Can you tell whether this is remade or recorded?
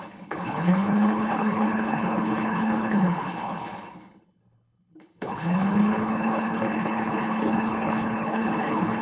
remade